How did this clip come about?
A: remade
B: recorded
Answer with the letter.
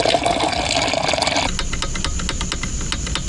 B